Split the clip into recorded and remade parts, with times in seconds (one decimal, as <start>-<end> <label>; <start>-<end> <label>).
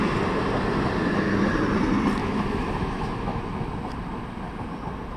0.0-2.2 recorded; 2.2-3.4 remade; 3.4-5.2 recorded